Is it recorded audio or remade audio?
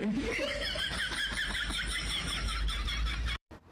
remade